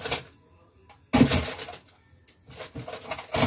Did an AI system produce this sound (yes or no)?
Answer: no